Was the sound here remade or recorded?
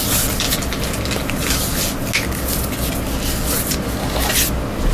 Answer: recorded